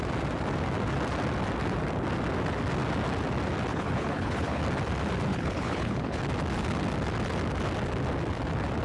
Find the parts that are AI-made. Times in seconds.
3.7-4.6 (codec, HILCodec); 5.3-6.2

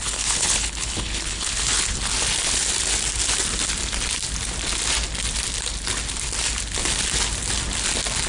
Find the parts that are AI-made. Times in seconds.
0.0-1.9 (codec, HILCodec)

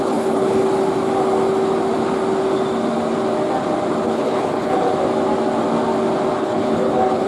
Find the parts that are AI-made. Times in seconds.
0.0-0.6 (codec, HILCodec); 4.0-4.9; 6.4-7.3

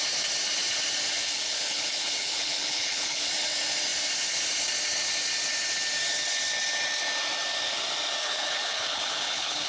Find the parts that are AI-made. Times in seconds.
1.2-3.3 (codec, HILCodec); 8.2-9.7

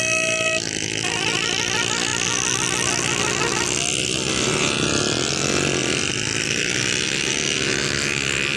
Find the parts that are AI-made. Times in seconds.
none

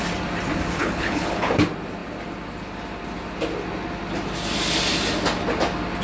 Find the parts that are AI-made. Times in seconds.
0.8-1.5 (codec, HILCodec)

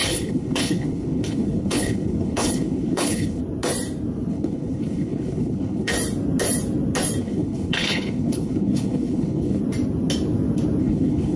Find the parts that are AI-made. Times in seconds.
0.0-3.4 (codec, HILCodec); 4.3-5.9; 7.2-9.6; 10.8-11.4